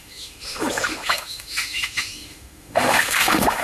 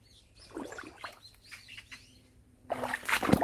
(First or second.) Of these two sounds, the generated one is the first